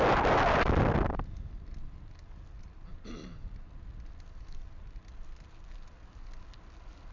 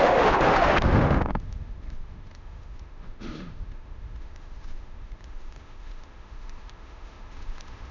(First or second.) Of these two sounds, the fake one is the second